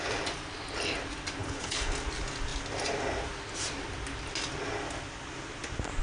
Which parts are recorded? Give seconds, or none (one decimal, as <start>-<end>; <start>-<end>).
0.0-1.4; 1.9-6.0